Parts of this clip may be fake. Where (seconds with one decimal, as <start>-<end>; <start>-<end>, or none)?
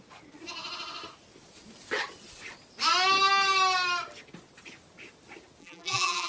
5.6-6.3